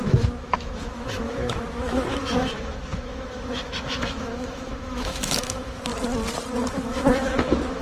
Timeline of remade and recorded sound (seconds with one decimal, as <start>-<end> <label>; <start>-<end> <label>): 0.0-5.9 remade; 5.9-6.7 recorded; 6.7-7.8 remade